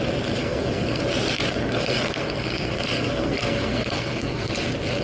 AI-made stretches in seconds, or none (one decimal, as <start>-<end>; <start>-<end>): 0.4-1.0; 1.5-4.5